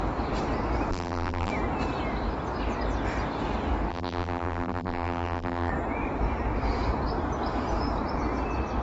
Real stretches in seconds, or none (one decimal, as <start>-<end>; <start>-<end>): 0.0-0.9; 1.5-3.9; 5.7-8.8